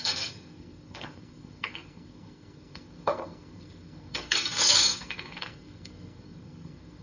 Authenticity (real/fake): fake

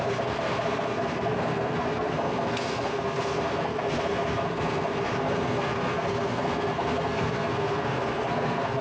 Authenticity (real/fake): fake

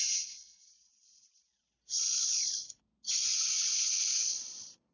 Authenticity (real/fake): real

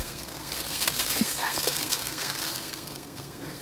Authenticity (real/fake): fake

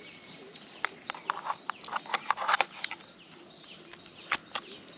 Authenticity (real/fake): real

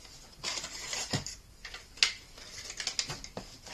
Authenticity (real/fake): real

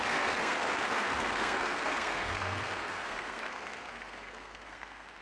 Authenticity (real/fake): fake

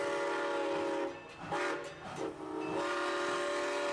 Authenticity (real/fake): real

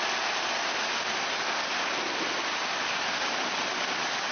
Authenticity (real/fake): real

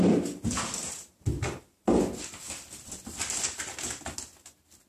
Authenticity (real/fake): real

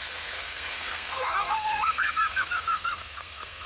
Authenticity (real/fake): fake